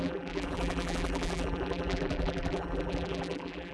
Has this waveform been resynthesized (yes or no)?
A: yes